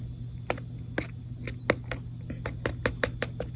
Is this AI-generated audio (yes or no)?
no